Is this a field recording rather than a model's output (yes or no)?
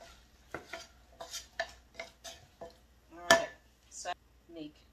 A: yes